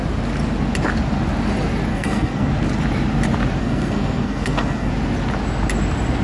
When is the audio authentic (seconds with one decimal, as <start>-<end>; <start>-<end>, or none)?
0.0-1.9; 2.5-3.6; 4.9-6.2